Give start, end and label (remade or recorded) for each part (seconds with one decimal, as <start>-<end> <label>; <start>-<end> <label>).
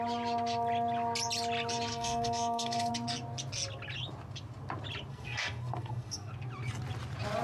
0.0-1.9 recorded; 1.9-2.9 remade; 2.9-5.1 recorded; 5.1-6.3 remade; 6.3-7.4 recorded